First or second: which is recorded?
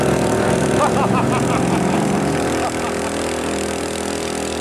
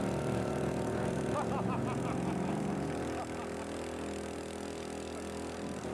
second